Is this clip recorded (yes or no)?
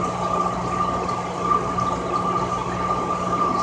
yes